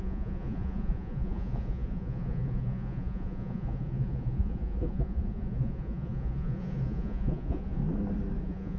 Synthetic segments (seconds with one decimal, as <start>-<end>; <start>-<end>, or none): 0.0-7.8; 8.4-8.8